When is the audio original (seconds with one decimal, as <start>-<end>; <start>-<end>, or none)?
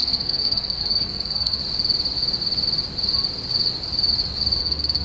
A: 1.6-4.6